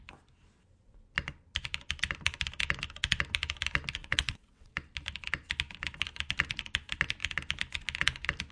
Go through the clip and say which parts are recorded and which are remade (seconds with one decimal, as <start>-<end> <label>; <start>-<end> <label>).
0.0-4.0 recorded; 4.0-4.7 remade; 4.7-8.5 recorded